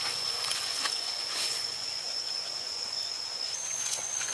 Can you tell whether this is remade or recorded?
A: remade